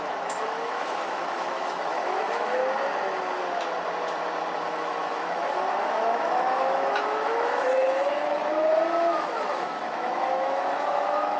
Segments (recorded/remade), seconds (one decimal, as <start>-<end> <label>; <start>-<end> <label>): 0.0-2.6 remade; 2.6-4.6 recorded; 4.6-8.4 remade; 8.4-9.2 recorded; 9.2-11.4 remade